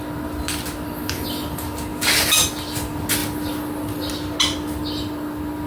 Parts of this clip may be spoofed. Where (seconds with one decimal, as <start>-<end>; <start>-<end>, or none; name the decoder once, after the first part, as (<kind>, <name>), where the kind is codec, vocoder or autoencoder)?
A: none